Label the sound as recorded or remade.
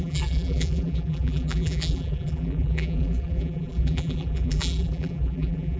remade